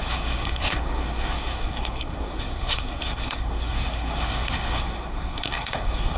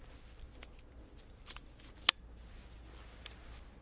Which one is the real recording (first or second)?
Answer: second